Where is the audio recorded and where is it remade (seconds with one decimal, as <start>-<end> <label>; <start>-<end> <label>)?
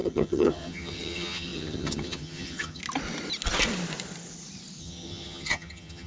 0.0-2.8 remade; 2.8-4.8 recorded; 4.8-6.1 remade